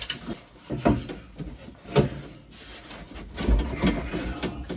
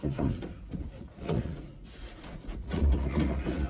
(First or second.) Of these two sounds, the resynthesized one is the second